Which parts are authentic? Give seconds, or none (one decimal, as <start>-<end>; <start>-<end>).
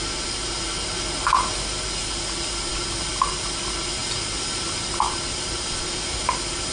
0.0-6.7